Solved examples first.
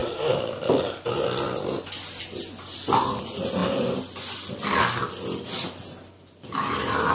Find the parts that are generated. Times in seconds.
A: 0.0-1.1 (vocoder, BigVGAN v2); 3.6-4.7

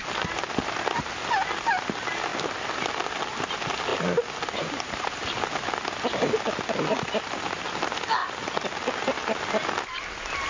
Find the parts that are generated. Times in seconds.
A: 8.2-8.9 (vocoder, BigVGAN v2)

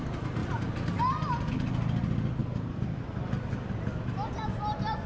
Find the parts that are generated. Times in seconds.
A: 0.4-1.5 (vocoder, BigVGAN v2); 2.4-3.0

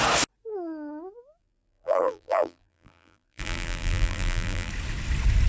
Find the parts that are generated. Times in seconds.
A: 1.4-4.7 (vocoder, BigVGAN v2)

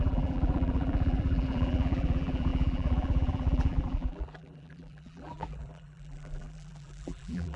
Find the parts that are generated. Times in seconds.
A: 0.0-7.6 (vocoder, BigVGAN v2)

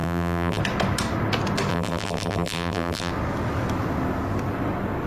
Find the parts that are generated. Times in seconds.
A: 0.0-0.6 (vocoder, BigVGAN v2); 1.7-3.1

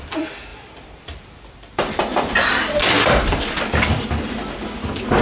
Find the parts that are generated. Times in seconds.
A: 0.5-3.6 (vocoder, BigVGAN v2)